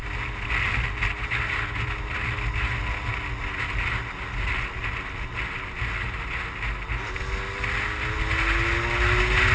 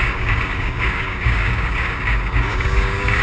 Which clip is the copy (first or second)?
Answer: second